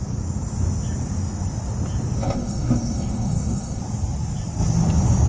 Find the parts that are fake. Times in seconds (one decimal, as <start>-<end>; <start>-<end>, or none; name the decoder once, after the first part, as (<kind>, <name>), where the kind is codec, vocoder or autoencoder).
2.2-3.8 (codec, SNAC)